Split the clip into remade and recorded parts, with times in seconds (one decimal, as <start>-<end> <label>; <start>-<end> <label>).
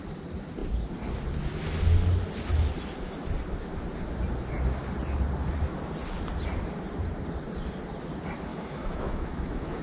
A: 0.0-8.5 recorded; 8.5-9.8 remade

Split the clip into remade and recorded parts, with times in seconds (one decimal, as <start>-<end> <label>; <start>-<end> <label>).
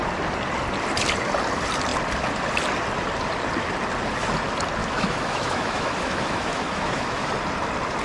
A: 0.0-4.8 recorded; 4.8-7.3 remade; 7.3-8.0 recorded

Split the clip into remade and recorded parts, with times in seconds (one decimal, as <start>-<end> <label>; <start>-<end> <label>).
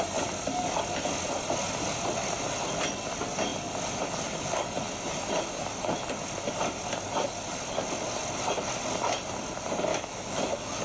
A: 0.0-9.9 recorded; 9.9-10.8 remade